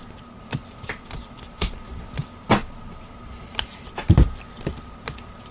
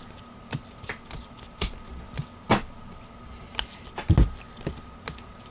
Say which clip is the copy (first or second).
first